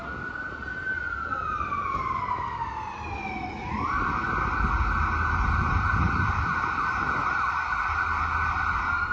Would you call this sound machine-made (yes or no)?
no